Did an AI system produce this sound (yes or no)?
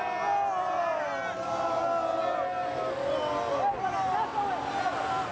no